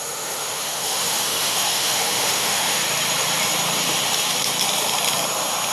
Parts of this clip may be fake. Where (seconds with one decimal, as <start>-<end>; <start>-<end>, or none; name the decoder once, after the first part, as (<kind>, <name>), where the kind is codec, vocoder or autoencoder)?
0.0-2.8 (autoencoder, DAC-VAE)